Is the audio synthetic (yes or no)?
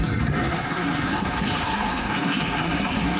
yes